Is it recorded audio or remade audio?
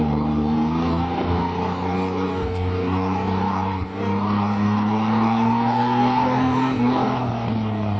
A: remade